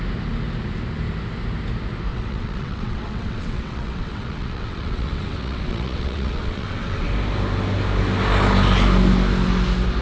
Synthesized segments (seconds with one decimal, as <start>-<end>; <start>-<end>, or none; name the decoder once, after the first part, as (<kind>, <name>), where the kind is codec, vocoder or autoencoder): 2.1-7.1 (vocoder, WaveNeXt)